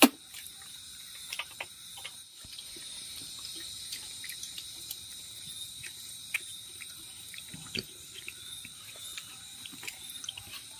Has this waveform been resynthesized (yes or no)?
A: yes